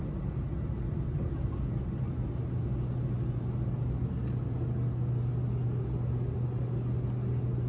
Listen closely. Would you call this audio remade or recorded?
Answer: recorded